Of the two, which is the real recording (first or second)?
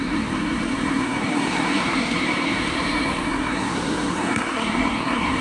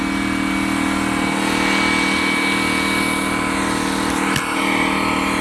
second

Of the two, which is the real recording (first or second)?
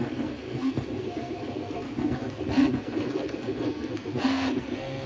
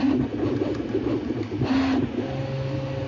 second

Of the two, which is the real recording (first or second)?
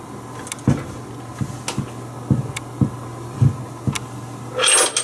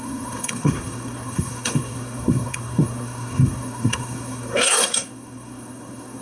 first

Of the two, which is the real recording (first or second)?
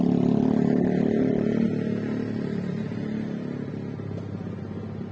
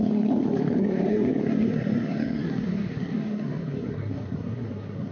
first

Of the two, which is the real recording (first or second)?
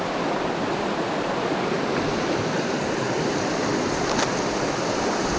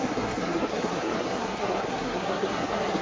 first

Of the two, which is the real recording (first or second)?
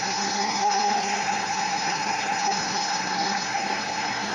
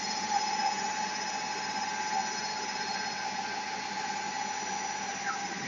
second